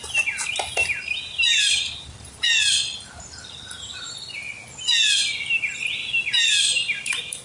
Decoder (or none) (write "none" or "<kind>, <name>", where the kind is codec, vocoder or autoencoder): none